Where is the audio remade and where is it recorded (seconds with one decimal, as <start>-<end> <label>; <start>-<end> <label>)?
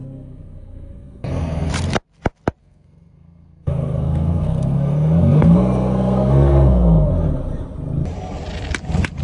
0.0-1.7 remade; 1.7-2.6 recorded; 2.6-7.1 remade; 7.1-9.2 recorded